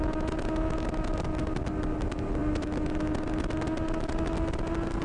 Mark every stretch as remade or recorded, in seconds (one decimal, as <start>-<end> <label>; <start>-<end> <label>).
0.0-5.0 recorded